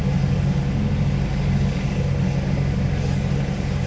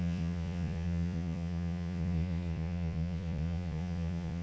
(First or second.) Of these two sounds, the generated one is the second